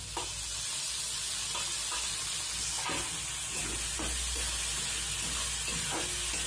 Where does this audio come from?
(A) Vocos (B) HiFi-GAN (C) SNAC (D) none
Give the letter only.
D